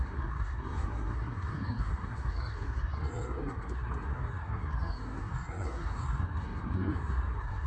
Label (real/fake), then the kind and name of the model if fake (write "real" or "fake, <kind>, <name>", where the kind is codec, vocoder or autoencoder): fake, codec, SNAC